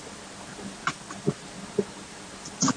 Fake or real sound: real